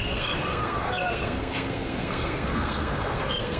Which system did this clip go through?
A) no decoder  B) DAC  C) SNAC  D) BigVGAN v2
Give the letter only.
C